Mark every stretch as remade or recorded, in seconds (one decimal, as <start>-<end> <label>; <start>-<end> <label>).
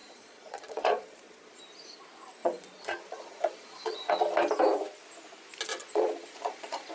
0.0-1.6 remade; 1.6-2.4 recorded; 2.4-4.1 remade; 4.1-5.7 recorded; 5.7-6.9 remade